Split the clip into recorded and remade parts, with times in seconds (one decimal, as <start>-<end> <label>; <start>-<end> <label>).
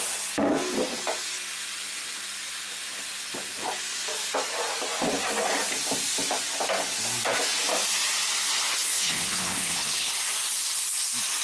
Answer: 0.0-8.7 recorded; 8.7-10.1 remade; 10.1-11.4 recorded